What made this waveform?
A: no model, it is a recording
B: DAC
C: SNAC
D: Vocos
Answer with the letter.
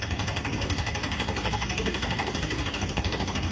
B